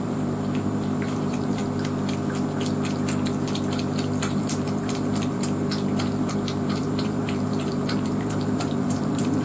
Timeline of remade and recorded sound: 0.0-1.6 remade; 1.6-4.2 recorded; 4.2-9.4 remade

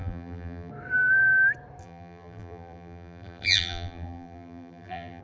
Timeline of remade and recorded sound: 0.0-0.7 remade; 0.7-1.8 recorded; 1.8-5.2 remade